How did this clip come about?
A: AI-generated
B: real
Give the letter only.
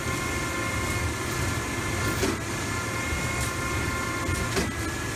B